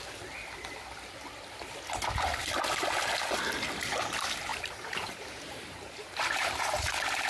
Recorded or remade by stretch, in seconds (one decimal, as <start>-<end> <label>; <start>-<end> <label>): 0.0-4.5 recorded; 4.5-6.6 remade; 6.6-7.3 recorded